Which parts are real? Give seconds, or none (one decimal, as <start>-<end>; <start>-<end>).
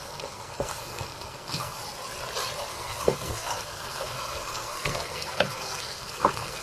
1.8-2.7